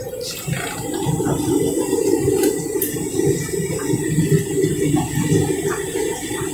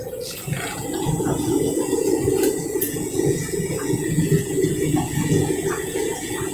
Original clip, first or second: first